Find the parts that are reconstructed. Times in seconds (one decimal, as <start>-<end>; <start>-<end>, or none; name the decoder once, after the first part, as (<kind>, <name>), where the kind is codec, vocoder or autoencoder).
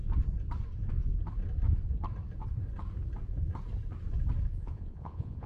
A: 4.5-5.5 (vocoder, Vocos)